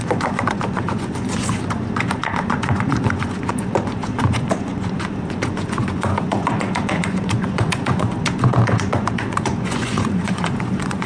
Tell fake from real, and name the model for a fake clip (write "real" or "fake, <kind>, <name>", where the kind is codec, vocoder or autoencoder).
fake, vocoder, Vocos